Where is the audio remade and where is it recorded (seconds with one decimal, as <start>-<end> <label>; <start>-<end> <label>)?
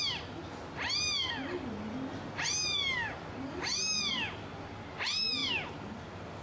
0.0-6.4 recorded